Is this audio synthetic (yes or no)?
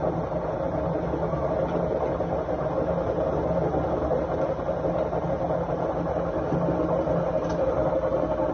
no